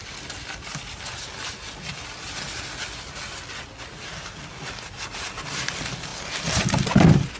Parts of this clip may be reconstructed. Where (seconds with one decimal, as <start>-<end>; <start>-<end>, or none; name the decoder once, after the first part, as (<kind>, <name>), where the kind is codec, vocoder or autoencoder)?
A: none